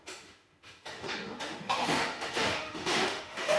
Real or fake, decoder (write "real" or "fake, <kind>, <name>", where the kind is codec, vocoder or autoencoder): fake, autoencoder, DAC-VAE